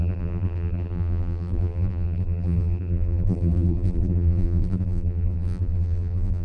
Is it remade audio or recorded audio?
remade